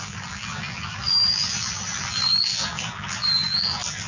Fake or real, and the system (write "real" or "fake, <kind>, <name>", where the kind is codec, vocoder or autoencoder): fake, vocoder, BigVGAN v2